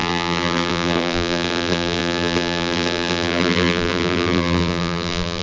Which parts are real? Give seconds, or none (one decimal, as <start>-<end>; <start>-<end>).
none